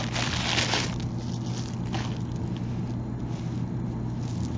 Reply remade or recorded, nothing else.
recorded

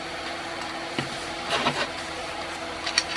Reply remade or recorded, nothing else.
remade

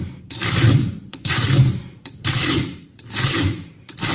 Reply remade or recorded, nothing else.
remade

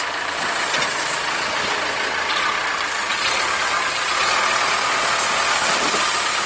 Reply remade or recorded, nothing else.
recorded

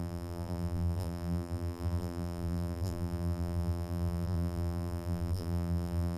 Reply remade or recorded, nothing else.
remade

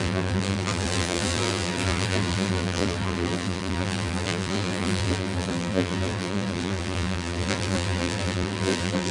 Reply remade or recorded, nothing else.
remade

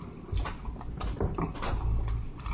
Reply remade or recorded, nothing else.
recorded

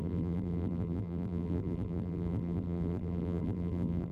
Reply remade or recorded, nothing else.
remade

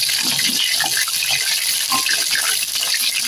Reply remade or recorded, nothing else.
recorded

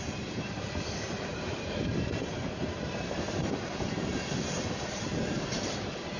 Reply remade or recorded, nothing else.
remade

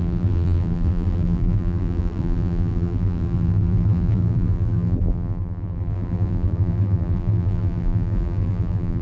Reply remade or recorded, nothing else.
remade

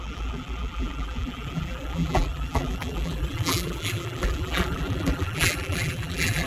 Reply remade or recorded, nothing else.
remade